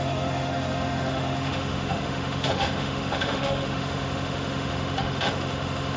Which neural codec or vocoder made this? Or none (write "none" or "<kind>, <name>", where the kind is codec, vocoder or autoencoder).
autoencoder, DAC-VAE